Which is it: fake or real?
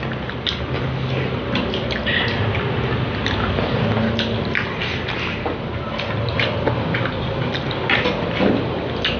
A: real